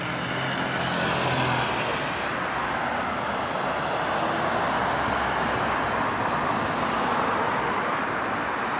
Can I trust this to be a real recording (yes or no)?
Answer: yes